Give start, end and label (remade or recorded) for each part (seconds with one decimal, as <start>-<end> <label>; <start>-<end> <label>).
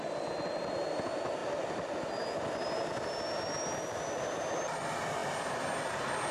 0.0-6.3 recorded